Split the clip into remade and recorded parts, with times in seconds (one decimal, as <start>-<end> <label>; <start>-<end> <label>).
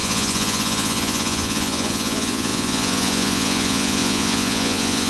0.0-5.1 remade